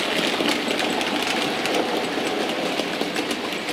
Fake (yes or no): no